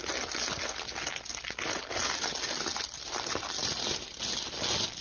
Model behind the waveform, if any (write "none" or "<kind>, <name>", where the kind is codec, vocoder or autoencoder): none